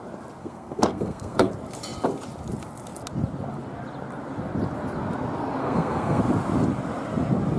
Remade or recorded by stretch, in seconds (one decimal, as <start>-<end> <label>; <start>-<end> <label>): 0.0-0.4 recorded; 0.4-1.5 remade; 1.5-5.6 recorded; 5.6-6.2 remade; 6.2-7.6 recorded